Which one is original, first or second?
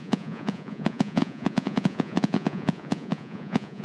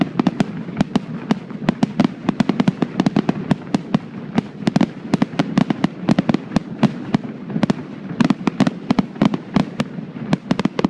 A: second